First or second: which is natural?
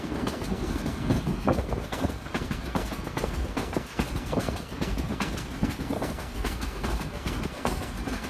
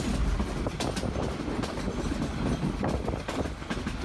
second